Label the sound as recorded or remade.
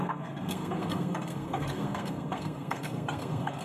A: remade